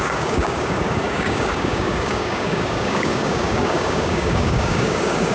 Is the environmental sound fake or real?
fake